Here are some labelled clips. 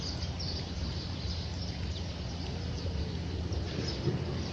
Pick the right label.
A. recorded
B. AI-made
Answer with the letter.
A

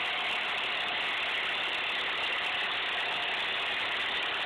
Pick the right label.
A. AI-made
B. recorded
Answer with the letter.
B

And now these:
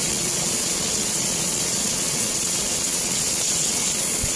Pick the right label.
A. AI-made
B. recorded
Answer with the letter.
A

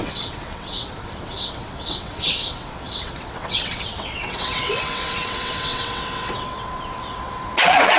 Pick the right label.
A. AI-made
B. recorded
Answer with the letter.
A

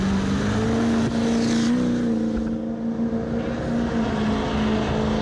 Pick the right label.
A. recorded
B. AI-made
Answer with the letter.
A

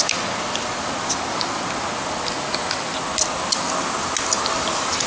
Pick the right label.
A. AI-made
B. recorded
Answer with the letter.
B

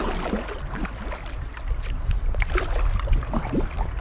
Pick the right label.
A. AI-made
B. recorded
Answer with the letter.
B